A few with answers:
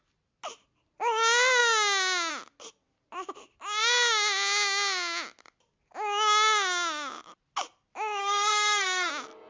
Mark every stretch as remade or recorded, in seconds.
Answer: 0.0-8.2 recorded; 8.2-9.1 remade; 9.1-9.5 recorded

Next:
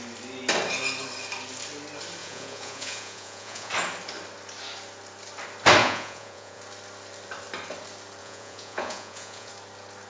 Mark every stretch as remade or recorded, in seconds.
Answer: 0.0-2.2 recorded; 2.2-3.7 remade; 3.7-5.8 recorded; 5.8-6.6 remade; 6.6-8.2 recorded; 8.2-9.5 remade; 9.5-10.1 recorded

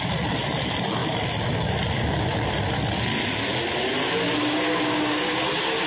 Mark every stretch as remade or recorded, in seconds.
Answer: 0.0-4.4 recorded; 4.4-5.4 remade; 5.4-5.9 recorded

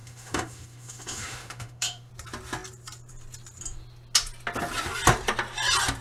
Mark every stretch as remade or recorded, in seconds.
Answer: 0.0-2.1 remade; 2.1-6.0 recorded

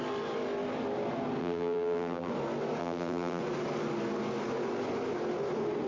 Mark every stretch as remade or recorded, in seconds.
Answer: 0.0-1.4 recorded; 1.4-2.3 remade; 2.3-2.8 recorded; 2.8-3.4 remade; 3.4-5.9 recorded

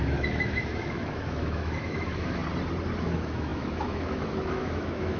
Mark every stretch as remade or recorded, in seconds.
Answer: 0.0-2.4 remade; 2.4-3.0 recorded; 3.0-5.2 remade

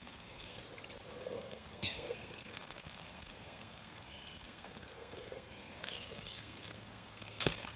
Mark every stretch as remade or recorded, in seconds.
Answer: 0.0-0.6 remade; 0.6-1.2 recorded; 1.2-7.8 remade

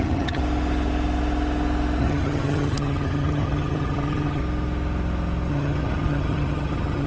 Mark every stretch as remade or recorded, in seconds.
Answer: 0.0-0.4 remade; 0.4-2.0 recorded; 2.0-4.4 remade; 4.4-5.5 recorded; 5.5-7.1 remade